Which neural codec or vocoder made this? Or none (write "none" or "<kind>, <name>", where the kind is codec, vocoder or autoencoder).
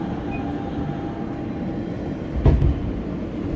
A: none